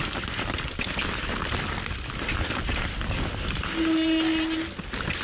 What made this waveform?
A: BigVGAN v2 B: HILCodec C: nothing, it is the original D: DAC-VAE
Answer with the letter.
C